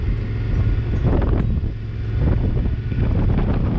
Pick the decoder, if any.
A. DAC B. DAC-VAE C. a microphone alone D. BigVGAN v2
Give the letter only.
C